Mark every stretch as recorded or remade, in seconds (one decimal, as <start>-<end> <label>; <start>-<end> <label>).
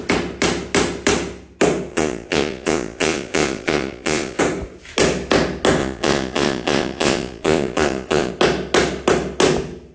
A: 0.0-1.9 recorded; 1.9-4.4 remade; 4.4-5.8 recorded; 5.8-8.3 remade; 8.3-9.9 recorded